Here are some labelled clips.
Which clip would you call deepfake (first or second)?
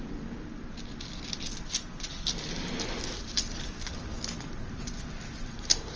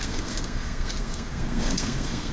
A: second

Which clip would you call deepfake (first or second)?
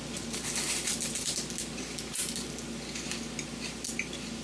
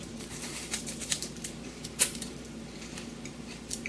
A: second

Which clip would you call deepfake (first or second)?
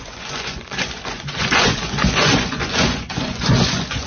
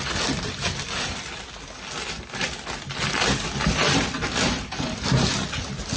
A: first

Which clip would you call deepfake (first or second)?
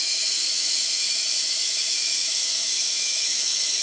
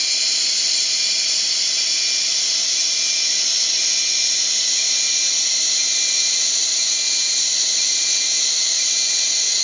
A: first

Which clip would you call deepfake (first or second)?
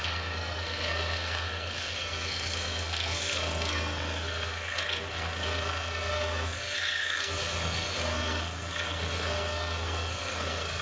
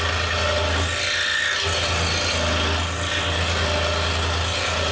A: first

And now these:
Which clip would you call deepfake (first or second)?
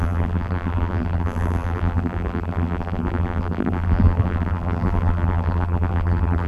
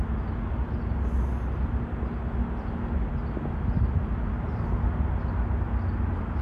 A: first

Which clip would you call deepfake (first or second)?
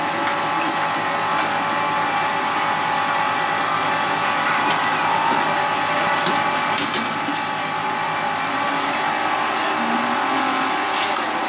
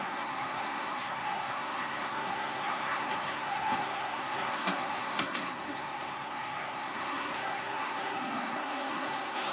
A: second